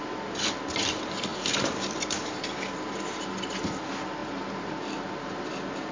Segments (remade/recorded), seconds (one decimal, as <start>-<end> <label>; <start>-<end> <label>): 0.0-1.3 recorded; 1.3-3.1 remade; 3.1-5.9 recorded